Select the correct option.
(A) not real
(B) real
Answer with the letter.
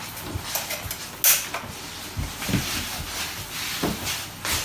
B